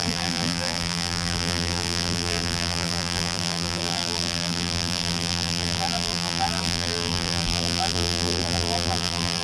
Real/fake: fake